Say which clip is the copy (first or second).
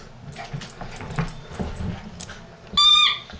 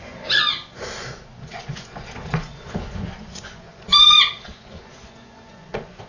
second